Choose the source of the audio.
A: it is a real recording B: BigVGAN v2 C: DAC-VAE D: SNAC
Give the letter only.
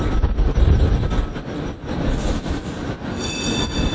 A